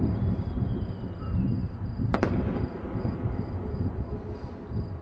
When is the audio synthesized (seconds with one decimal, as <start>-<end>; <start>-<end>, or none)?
none